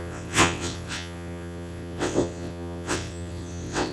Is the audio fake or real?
fake